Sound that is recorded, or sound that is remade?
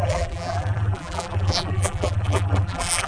remade